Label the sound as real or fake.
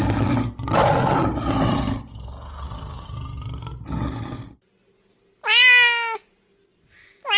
real